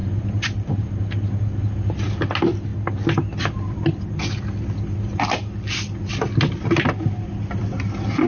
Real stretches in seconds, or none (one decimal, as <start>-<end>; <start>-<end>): 1.3-8.3